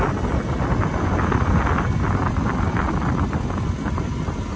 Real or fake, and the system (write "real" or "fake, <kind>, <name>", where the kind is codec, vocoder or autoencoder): real